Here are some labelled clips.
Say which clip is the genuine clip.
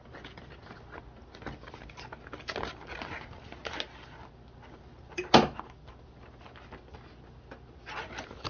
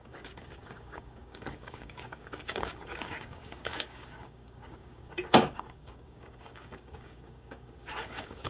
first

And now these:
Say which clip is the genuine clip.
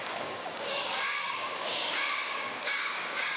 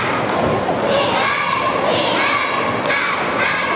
second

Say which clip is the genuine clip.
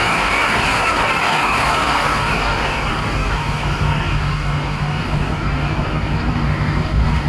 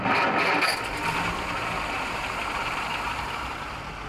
second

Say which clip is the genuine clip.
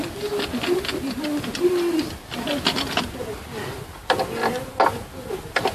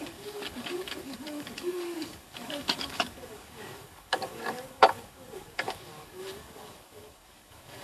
first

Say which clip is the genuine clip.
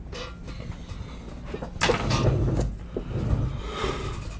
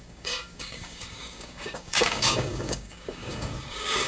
first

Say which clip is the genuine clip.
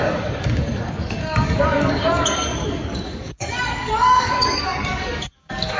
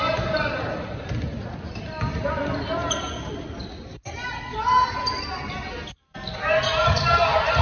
second